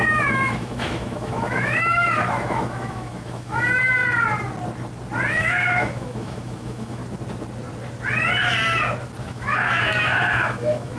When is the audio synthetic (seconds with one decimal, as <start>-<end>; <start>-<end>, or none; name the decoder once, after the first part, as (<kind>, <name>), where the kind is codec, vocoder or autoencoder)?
0.0-4.0 (autoencoder, DAC-VAE); 5.3-7.0; 9.2-11.0